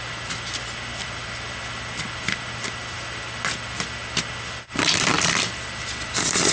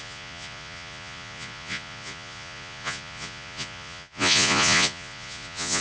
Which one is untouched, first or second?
first